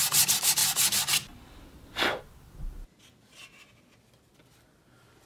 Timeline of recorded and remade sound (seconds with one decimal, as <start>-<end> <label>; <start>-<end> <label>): 0.0-5.3 recorded